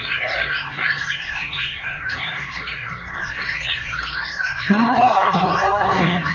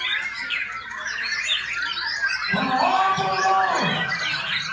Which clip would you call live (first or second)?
second